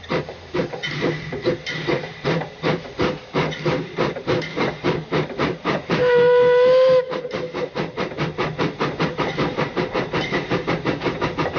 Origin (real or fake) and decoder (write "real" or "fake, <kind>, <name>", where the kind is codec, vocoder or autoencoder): fake, vocoder, BigVGAN v2